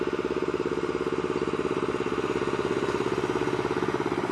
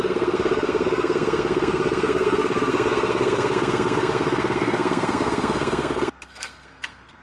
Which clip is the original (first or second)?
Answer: first